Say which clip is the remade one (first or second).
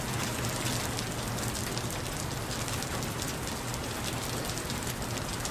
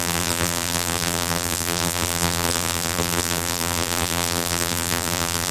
second